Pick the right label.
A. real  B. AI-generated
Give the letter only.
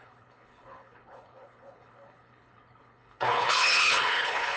B